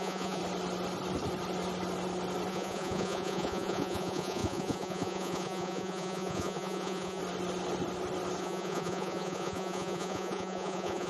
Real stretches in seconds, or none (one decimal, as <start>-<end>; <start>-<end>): 0.4-2.5; 7.2-8.4